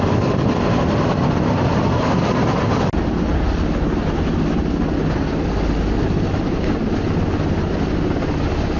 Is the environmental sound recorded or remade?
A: recorded